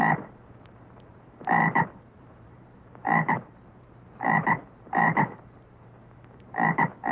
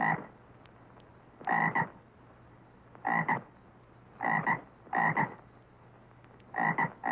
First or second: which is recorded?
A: second